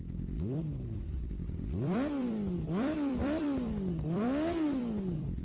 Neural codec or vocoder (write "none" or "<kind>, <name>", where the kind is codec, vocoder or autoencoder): vocoder, BigVGAN v2